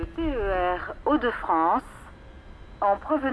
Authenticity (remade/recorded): recorded